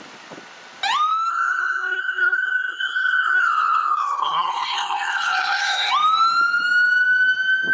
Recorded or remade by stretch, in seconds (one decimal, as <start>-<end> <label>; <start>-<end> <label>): 0.0-1.3 recorded; 1.3-5.9 remade; 5.9-7.7 recorded